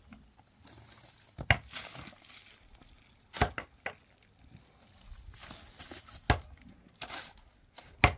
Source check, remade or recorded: recorded